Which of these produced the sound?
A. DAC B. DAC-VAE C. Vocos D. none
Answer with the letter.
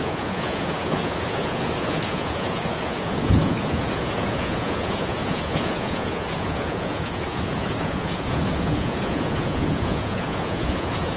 C